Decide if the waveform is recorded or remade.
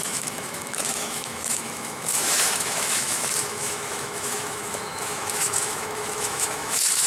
remade